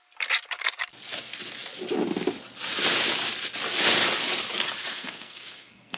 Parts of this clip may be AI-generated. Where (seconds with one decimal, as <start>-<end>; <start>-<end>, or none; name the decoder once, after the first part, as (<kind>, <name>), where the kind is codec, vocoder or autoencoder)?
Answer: 4.9-6.0 (codec, SNAC)